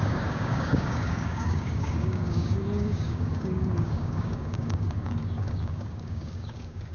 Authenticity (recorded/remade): remade